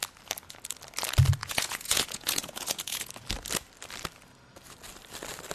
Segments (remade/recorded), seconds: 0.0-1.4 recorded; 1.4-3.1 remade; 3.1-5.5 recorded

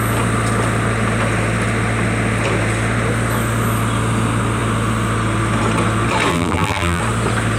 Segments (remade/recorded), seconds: 0.0-6.3 recorded; 6.3-7.0 remade; 7.0-7.6 recorded

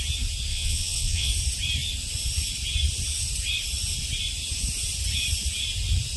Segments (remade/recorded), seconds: 0.0-0.5 recorded; 0.5-1.3 remade; 1.3-6.2 recorded

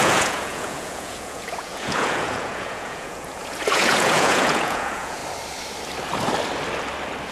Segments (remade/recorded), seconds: 0.0-5.2 remade; 5.2-7.3 recorded